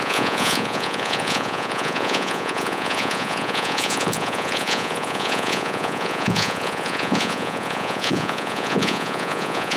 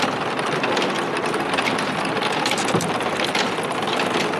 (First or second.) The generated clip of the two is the first